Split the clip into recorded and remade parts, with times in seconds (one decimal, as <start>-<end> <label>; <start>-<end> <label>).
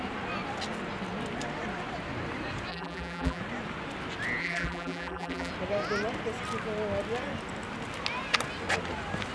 0.0-2.7 recorded; 2.7-3.4 remade; 3.4-4.4 recorded; 4.4-5.5 remade; 5.5-9.3 recorded